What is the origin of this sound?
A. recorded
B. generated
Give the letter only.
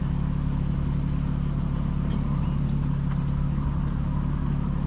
A